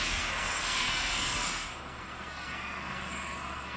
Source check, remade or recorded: remade